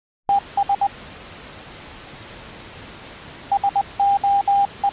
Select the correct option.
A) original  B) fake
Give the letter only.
A